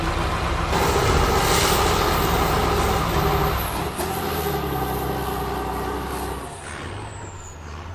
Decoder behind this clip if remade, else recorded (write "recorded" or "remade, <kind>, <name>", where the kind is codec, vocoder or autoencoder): recorded